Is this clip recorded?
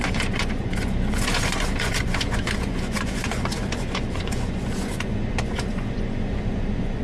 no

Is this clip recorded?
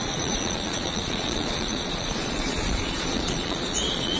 no